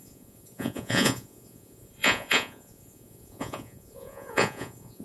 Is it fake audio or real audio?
fake